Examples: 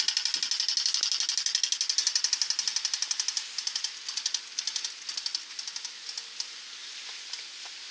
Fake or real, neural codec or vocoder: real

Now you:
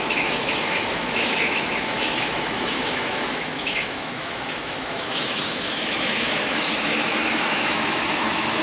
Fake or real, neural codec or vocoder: fake, autoencoder, DAC-VAE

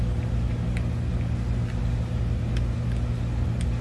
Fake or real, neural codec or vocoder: real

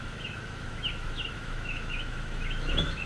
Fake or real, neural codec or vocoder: fake, autoencoder, DAC-VAE